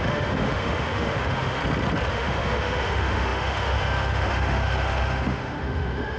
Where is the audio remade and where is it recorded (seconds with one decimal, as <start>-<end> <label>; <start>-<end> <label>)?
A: 0.0-1.6 remade; 1.6-2.1 recorded; 2.1-6.2 remade